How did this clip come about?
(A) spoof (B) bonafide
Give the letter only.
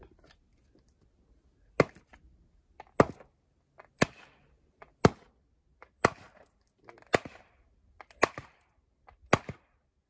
B